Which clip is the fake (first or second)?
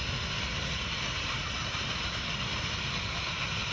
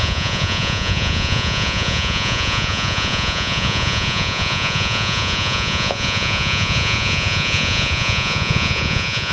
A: second